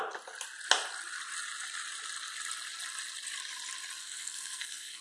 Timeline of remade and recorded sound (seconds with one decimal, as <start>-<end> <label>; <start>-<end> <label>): 0.0-4.0 recorded; 4.0-5.0 remade